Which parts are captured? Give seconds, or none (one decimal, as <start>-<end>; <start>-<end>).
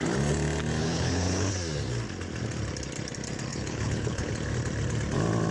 0.0-0.8; 1.5-3.5; 4.3-5.5